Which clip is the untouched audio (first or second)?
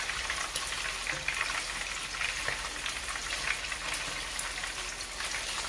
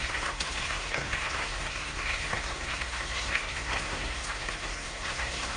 first